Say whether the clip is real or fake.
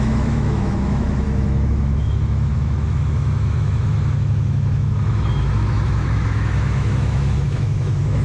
fake